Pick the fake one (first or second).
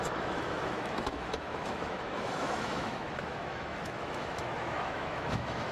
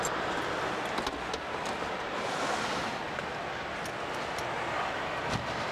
first